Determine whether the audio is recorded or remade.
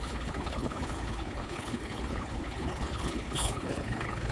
remade